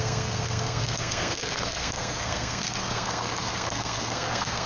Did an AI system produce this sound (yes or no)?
yes